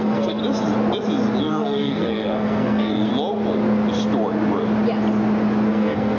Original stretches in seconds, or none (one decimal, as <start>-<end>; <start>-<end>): 0.4-1.4; 3.1-5.7